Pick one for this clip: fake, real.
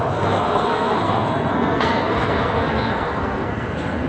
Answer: fake